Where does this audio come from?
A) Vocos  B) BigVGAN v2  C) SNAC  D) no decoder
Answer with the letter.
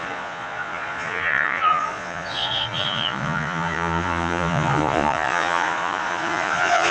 A